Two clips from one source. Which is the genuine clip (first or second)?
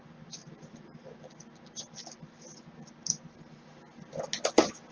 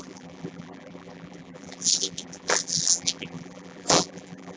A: first